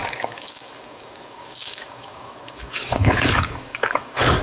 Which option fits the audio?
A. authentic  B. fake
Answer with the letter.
B